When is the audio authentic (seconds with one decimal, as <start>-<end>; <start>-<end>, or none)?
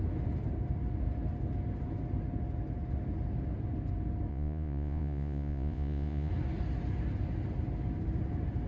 0.0-4.3; 6.3-8.7